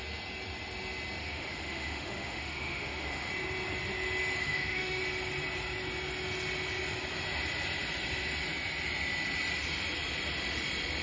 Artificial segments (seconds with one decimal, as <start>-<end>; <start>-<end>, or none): 1.2-3.3; 4.4-5.0